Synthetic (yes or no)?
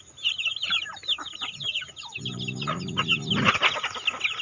no